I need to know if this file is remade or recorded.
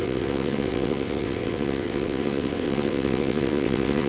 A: remade